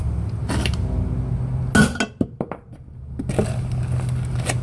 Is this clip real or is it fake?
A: real